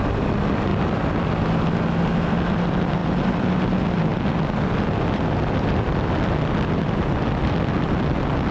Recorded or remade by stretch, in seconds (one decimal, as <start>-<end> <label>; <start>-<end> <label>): 0.0-0.7 recorded; 0.7-1.6 remade; 1.6-3.0 recorded; 3.0-3.5 remade; 3.5-8.5 recorded